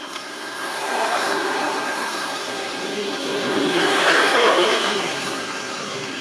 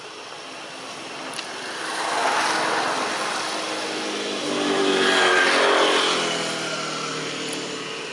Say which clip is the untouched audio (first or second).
second